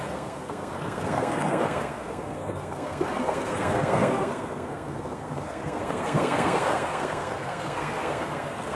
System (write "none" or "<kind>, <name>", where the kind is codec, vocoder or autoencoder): codec, SNAC